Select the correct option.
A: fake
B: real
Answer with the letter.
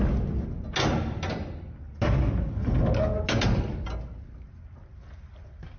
B